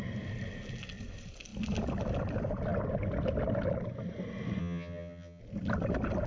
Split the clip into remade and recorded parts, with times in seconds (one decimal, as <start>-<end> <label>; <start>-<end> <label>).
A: 0.0-4.6 recorded; 4.6-5.4 remade; 5.4-6.3 recorded